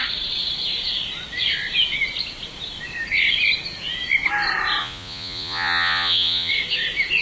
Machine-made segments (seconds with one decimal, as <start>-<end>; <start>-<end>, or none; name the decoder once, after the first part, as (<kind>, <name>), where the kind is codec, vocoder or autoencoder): 4.8-6.5 (vocoder, Vocos)

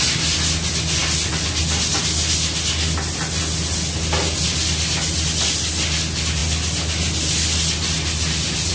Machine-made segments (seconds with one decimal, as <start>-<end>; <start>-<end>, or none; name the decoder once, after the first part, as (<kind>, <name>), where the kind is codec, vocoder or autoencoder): none

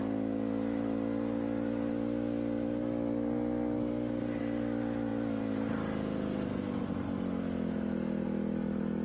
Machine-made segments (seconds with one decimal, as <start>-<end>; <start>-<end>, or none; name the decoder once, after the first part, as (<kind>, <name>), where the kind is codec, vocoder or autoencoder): none

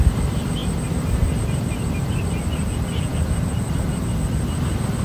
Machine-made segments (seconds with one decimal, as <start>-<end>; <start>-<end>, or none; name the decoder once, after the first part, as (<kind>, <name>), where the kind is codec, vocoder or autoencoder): none

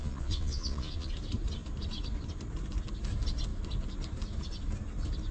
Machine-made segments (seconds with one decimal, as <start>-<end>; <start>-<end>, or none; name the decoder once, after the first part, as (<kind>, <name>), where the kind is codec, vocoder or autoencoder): 0.0-1.1 (vocoder, Vocos)